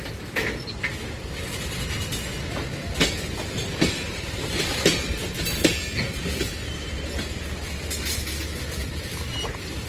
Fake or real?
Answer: real